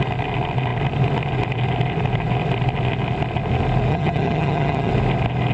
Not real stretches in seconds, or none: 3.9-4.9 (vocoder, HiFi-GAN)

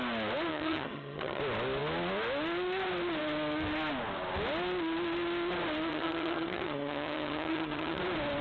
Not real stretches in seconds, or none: 0.5-1.4 (vocoder, HiFi-GAN); 5.9-8.0

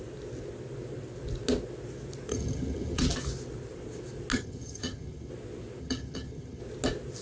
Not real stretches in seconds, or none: 2.3-3.0 (vocoder, HiFi-GAN); 4.3-5.3; 5.8-6.6

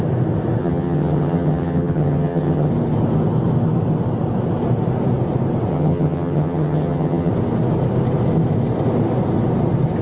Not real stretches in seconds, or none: 0.6-2.7 (vocoder, HiFi-GAN); 5.7-7.3

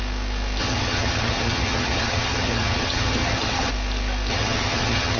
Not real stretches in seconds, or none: 0.6-3.7 (vocoder, HiFi-GAN); 4.3-5.2

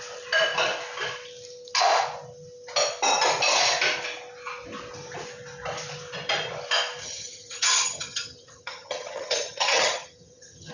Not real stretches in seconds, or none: 7.0-10.7 (vocoder, HiFi-GAN)

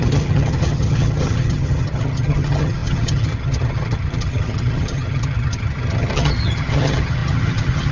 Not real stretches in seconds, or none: 0.0-7.9 (vocoder, HiFi-GAN)

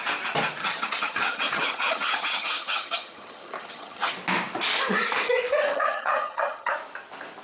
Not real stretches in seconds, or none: 0.6-4.1 (vocoder, HiFi-GAN); 5.7-6.7